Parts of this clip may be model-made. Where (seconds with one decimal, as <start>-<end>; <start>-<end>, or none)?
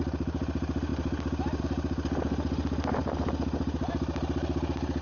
0.0-0.9; 1.6-3.0; 3.9-5.0